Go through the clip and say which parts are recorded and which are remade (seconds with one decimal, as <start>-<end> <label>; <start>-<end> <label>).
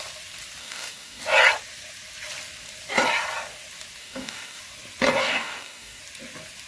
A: 0.0-0.6 recorded; 0.6-1.2 remade; 1.2-4.0 recorded; 4.0-4.6 remade; 4.6-5.2 recorded; 5.2-6.0 remade; 6.0-6.7 recorded